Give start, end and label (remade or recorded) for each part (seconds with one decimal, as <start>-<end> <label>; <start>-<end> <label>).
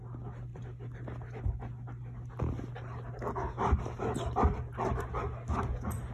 0.0-6.1 recorded